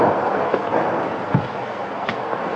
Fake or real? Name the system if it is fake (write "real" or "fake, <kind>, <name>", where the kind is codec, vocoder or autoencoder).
fake, codec, SNAC